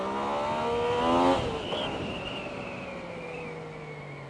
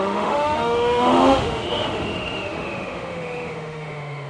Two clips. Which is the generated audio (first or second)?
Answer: second